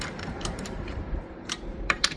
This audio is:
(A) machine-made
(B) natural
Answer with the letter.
A